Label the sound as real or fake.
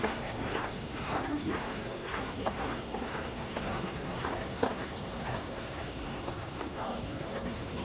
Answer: fake